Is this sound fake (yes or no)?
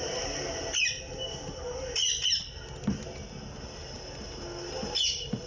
no